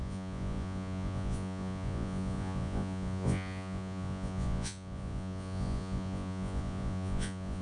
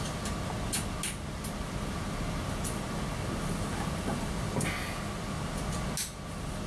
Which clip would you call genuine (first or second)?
second